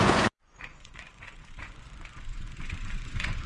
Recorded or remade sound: remade